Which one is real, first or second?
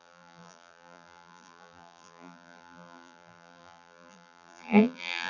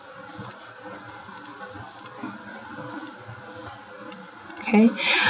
second